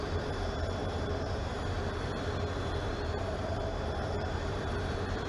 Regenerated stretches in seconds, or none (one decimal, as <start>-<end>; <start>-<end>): 0.0-1.5; 2.9-5.3